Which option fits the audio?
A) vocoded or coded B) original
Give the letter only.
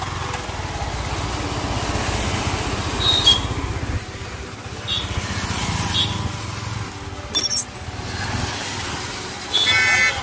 B